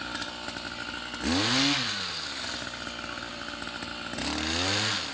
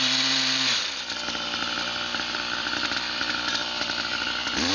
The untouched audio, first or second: first